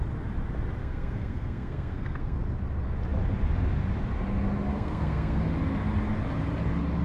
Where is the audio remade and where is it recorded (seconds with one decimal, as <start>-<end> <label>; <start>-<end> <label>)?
0.0-0.8 recorded; 0.8-2.4 remade; 2.4-4.7 recorded; 4.7-5.4 remade; 5.4-7.0 recorded